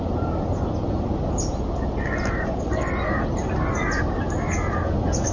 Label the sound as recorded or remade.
recorded